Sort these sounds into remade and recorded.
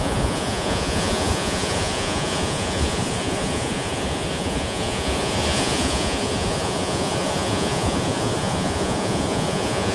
remade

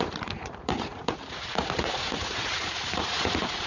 remade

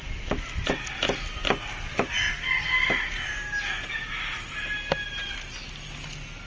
recorded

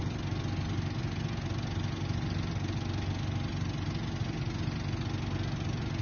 recorded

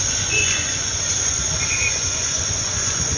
remade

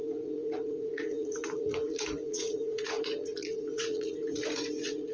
remade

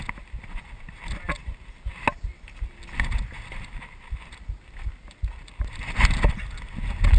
recorded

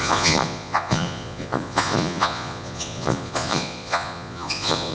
remade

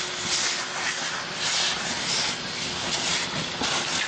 recorded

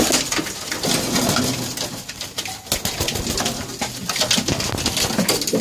recorded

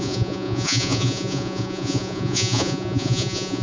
remade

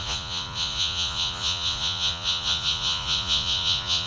remade